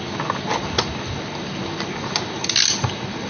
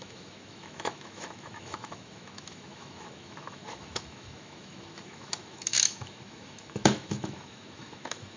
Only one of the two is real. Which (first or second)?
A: first